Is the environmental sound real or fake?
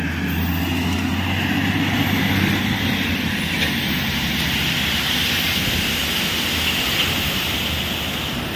real